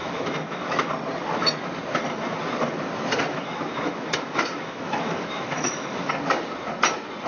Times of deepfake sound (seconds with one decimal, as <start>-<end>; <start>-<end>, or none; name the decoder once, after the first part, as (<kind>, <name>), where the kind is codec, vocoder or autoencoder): 0.0-0.9 (autoencoder, DAC-VAE); 3.3-6.1